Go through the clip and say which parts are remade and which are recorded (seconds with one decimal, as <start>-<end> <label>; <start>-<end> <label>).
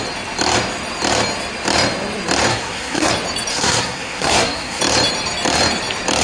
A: 0.0-2.5 recorded; 2.5-3.1 remade; 3.1-3.5 recorded; 3.5-4.8 remade; 4.8-6.2 recorded